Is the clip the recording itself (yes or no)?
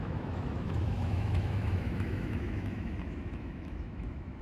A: no